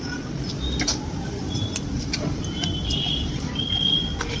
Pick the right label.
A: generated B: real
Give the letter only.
B